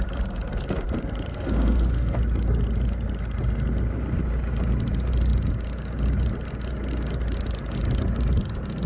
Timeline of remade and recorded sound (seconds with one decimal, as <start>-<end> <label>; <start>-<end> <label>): 0.0-1.3 recorded; 1.3-2.2 remade; 2.2-8.9 recorded